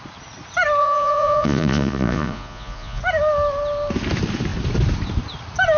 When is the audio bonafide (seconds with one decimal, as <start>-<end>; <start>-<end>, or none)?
0.0-0.8; 3.0-5.8